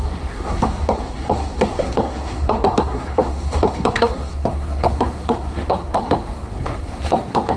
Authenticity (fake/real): fake